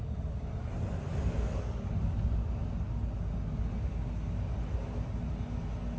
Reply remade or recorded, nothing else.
recorded